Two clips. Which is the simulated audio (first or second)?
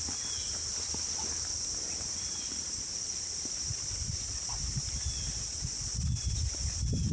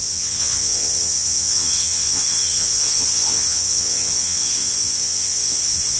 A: second